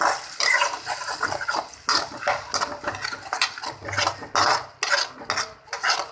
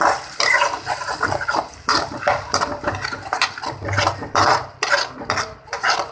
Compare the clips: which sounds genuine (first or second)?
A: first